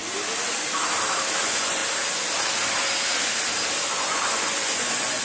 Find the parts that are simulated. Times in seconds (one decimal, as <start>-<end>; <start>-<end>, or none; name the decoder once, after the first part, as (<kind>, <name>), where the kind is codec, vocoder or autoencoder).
1.4-1.8 (vocoder, Vocos); 3.9-5.2